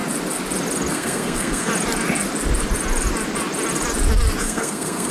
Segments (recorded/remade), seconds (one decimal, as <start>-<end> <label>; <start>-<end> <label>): 0.0-0.9 recorded; 0.9-1.7 remade; 1.7-4.4 recorded; 4.4-5.1 remade